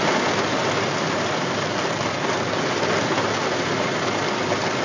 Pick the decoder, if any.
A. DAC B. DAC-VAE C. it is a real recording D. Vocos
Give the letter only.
C